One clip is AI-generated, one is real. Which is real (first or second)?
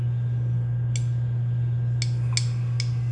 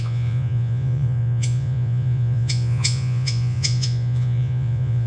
first